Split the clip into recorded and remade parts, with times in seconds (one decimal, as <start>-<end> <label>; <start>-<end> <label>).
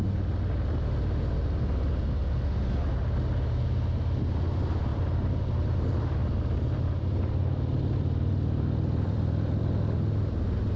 0.0-4.9 recorded; 4.9-9.6 remade; 9.6-10.8 recorded